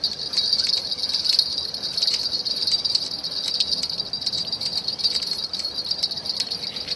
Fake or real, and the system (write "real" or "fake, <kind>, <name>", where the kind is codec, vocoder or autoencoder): real